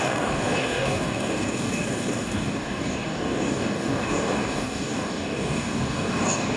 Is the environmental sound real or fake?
fake